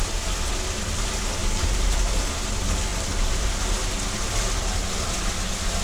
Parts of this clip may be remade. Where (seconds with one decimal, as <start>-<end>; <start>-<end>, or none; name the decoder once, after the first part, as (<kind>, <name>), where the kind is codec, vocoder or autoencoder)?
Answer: 1.4-2.1 (vocoder, BigVGAN v2); 2.9-3.6